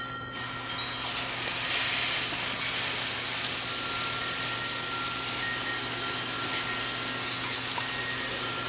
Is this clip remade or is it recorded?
recorded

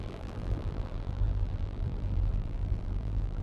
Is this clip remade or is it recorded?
remade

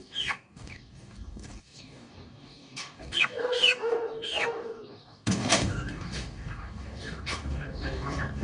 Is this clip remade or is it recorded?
remade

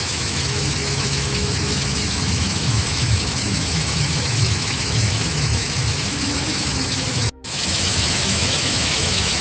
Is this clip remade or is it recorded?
remade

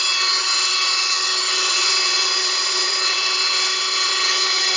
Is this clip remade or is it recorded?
remade